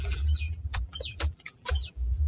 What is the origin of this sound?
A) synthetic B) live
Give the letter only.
A